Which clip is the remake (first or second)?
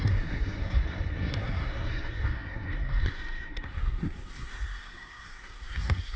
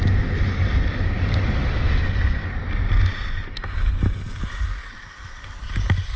first